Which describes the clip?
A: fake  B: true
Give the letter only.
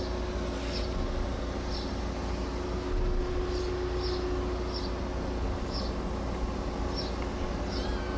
B